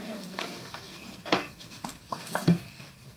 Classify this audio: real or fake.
fake